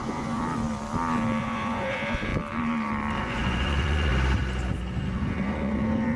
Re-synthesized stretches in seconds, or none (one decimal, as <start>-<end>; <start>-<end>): 0.0-0.4; 1.4-2.3; 3.2-4.1; 5.0-6.2